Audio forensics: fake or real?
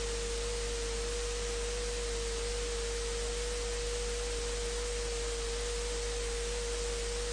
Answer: real